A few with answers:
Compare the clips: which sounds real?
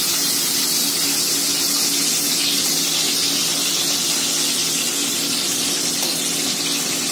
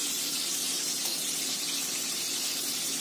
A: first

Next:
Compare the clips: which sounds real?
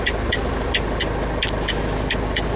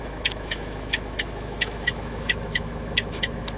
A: first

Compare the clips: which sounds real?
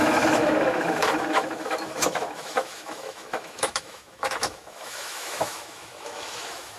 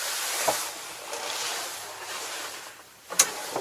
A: second